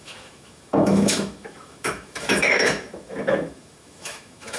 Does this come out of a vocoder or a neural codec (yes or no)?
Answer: yes